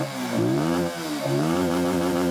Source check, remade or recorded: remade